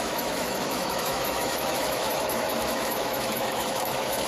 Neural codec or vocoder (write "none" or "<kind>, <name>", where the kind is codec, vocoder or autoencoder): autoencoder, DAC-VAE